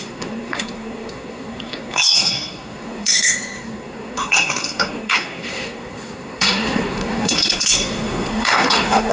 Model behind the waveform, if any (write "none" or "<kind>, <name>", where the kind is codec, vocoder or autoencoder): codec, SNAC